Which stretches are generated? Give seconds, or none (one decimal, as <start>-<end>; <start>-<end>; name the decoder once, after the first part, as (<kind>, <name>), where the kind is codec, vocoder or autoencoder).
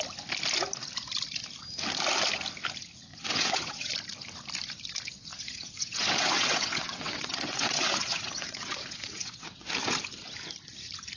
3.1-3.9 (vocoder, WaveNeXt); 5.3-9.7